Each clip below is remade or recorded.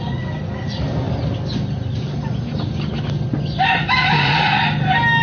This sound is recorded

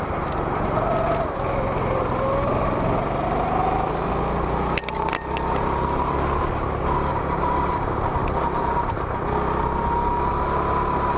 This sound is recorded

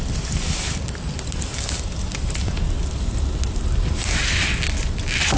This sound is recorded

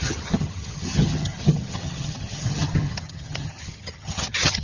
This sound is remade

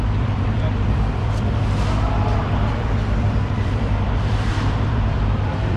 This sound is remade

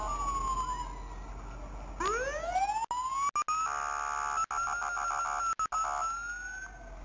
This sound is recorded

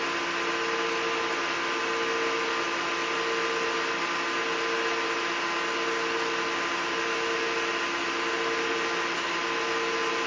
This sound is recorded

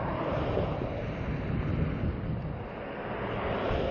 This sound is recorded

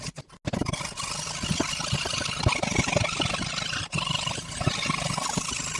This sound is recorded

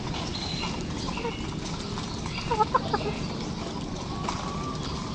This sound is recorded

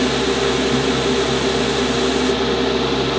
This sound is recorded